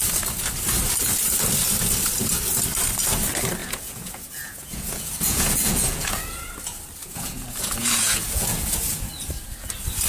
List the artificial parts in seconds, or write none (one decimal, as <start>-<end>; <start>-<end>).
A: 3.6-6.5; 7.0-9.1